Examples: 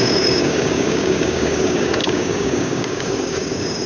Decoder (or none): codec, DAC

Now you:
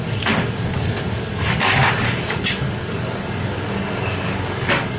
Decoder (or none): codec, DAC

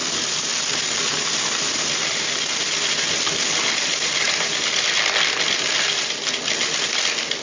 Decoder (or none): none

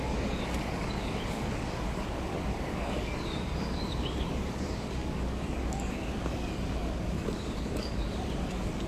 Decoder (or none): codec, DAC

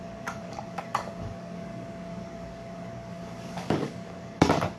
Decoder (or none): codec, DAC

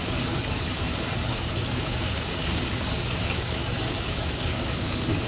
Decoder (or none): codec, DAC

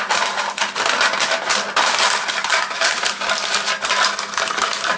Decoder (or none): none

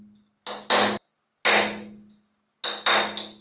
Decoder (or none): none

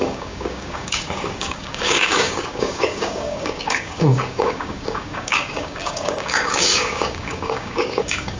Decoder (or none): codec, DAC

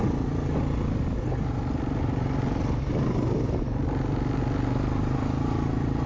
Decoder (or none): none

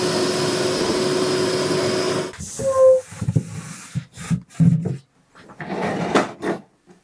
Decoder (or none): none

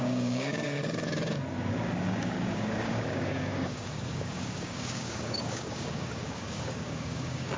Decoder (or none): codec, DAC